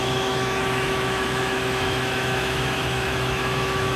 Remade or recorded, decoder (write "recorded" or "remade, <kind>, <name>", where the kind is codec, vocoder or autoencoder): remade, autoencoder, DAC-VAE